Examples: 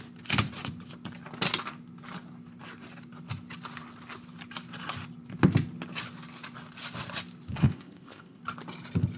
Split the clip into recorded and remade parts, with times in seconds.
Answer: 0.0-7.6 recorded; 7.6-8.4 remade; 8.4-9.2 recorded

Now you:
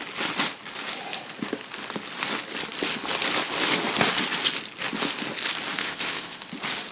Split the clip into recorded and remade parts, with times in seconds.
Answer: 0.0-5.8 recorded; 5.8-6.5 remade; 6.5-6.9 recorded

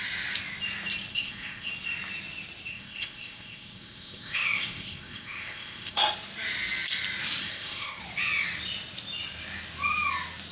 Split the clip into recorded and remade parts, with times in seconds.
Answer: 0.0-1.1 recorded; 1.1-1.7 remade; 1.7-2.7 recorded; 2.7-6.0 remade; 6.0-7.4 recorded; 7.4-8.0 remade; 8.0-10.5 recorded

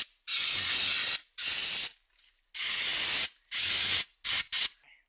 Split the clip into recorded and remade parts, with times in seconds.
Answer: 0.0-5.1 recorded

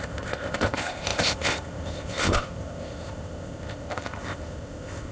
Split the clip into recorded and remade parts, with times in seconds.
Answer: 0.0-5.1 remade

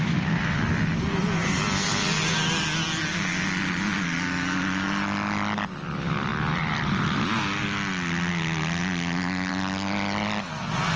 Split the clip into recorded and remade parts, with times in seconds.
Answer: 0.0-11.0 recorded

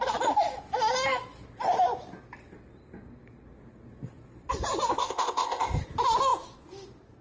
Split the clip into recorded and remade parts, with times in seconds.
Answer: 0.0-5.0 recorded; 5.0-5.8 remade; 5.8-7.2 recorded